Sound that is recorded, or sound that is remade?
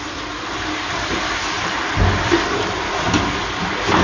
recorded